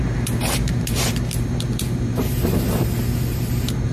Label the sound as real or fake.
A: fake